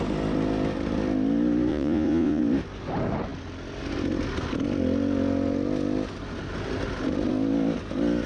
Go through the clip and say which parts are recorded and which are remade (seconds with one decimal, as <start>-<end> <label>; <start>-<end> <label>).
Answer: 0.0-1.7 recorded; 1.7-2.4 remade; 2.4-8.3 recorded